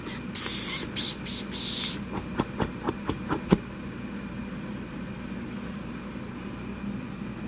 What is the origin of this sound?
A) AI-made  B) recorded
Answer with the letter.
B